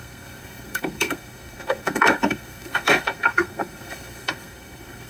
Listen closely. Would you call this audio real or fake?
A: fake